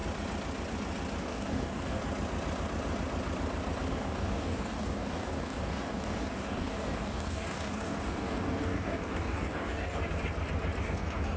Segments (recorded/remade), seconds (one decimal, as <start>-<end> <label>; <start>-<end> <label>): 0.0-1.2 recorded; 1.2-2.0 remade; 2.0-3.9 recorded; 3.9-10.0 remade; 10.0-10.8 recorded; 10.8-11.4 remade